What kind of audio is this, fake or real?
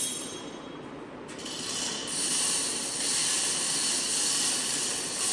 real